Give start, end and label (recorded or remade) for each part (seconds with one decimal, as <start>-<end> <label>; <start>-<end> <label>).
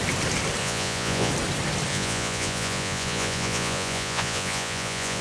0.0-0.6 recorded; 0.6-1.3 remade; 1.3-1.9 recorded; 1.9-5.2 remade